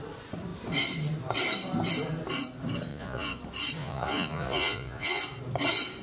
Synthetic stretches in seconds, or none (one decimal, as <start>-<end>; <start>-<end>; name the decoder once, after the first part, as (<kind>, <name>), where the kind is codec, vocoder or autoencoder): 2.9-3.4 (vocoder, Vocos); 3.8-5.2